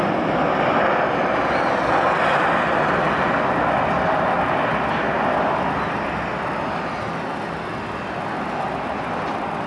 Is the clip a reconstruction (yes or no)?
no